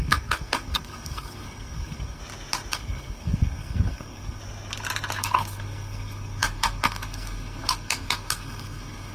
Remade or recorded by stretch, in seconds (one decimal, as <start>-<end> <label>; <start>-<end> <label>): 0.0-2.2 remade; 2.2-2.7 recorded; 2.7-4.4 remade; 4.4-5.2 recorded; 5.2-9.1 remade